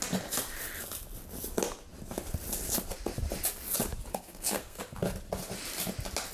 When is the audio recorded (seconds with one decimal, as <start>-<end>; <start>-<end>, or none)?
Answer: 0.0-4.1; 4.8-6.3